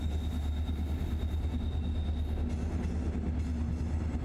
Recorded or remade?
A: recorded